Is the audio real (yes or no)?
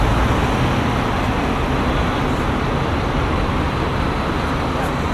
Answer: yes